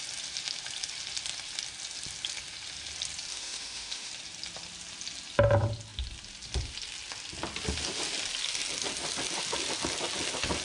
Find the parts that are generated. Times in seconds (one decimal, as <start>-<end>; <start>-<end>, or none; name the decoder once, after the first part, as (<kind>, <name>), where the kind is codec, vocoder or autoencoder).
3.3-4.1 (autoencoder, DAC-VAE)